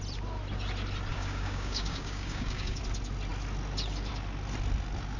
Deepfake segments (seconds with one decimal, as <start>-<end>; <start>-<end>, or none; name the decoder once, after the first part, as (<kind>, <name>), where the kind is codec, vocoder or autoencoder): 1.1-2.8 (codec, DAC)